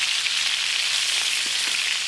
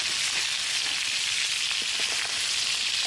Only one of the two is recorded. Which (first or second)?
second